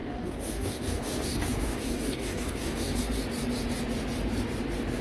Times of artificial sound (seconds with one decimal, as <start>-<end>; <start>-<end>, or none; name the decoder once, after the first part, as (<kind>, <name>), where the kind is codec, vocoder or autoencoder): 0.0-3.0 (codec, DAC)